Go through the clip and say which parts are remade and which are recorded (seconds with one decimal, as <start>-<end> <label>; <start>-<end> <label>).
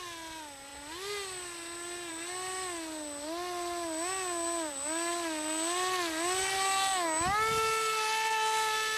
0.0-9.0 recorded